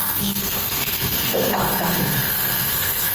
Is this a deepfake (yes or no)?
yes